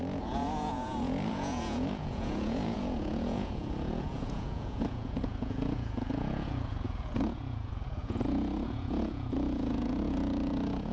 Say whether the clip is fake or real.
fake